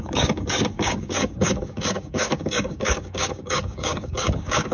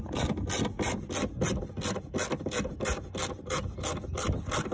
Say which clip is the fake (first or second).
first